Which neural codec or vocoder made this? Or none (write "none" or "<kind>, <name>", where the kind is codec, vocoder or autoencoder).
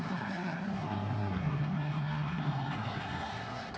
codec, SNAC